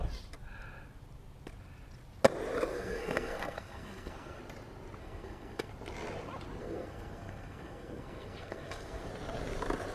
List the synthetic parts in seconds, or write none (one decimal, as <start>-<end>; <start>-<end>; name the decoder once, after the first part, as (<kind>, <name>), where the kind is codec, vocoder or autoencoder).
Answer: 2.7-4.4 (codec, SNAC); 5.0-5.7; 6.6-9.1